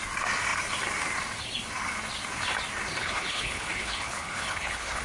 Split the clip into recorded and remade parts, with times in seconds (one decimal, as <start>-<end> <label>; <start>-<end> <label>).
0.0-3.0 recorded; 3.0-5.0 remade